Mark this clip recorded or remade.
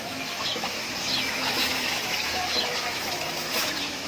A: remade